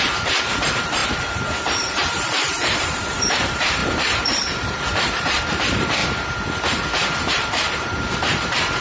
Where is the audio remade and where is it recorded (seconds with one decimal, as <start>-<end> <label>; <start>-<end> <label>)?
0.0-6.0 remade; 6.0-7.3 recorded; 7.3-8.8 remade